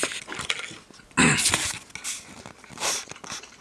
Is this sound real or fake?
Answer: real